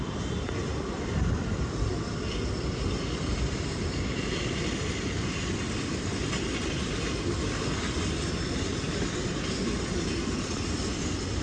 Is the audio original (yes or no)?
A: yes